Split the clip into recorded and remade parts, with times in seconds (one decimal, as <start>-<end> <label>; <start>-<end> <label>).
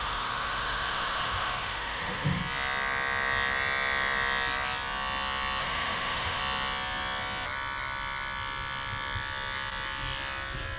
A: 0.0-2.4 remade; 2.4-5.6 recorded; 5.6-6.4 remade; 6.4-10.8 recorded